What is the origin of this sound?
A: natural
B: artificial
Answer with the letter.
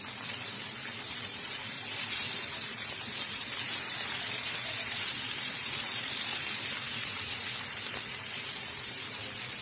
A